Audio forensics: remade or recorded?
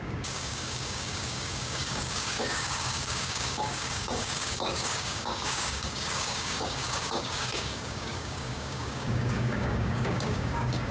remade